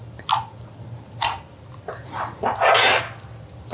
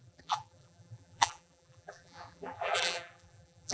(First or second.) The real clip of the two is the first